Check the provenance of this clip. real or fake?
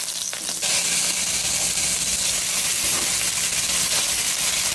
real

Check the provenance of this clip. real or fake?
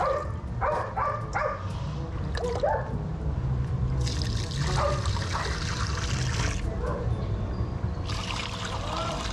real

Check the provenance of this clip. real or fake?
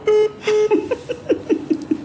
real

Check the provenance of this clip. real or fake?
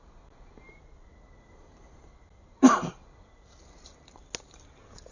real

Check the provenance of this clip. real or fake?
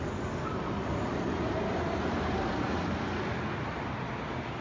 real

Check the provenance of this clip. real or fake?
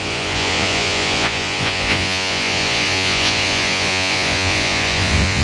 fake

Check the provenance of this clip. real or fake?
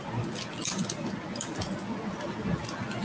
real